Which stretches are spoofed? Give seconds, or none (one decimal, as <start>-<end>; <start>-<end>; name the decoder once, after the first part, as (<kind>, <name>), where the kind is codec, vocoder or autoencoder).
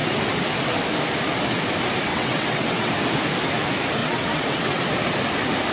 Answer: 2.1-2.9 (vocoder, WaveNeXt); 4.0-4.8